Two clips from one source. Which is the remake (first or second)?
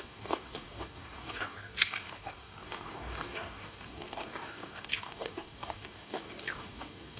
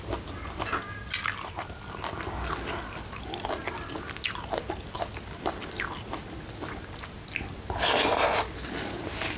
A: first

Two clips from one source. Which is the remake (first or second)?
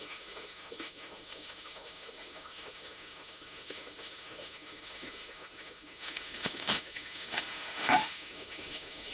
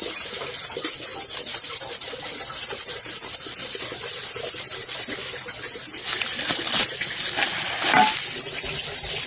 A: first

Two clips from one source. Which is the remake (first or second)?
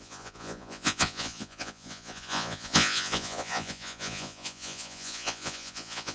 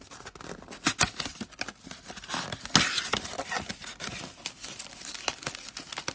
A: first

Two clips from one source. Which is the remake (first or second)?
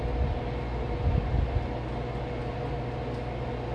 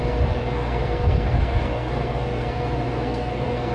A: second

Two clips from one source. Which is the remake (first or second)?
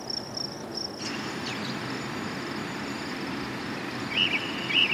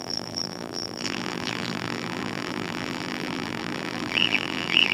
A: second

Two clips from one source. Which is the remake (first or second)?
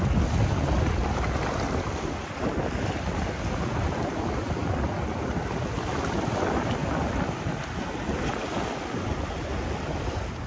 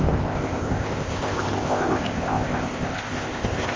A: second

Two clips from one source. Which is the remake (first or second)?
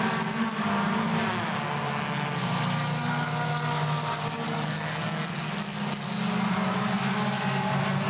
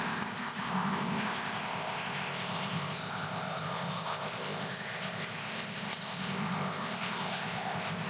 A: second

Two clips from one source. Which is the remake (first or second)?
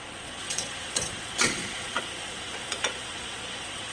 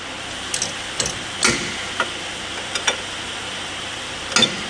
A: first